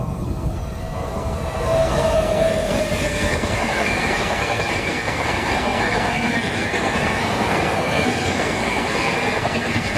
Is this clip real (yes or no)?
no